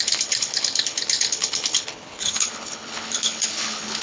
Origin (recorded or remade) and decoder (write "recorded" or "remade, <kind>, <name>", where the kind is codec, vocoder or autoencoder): remade, codec, HILCodec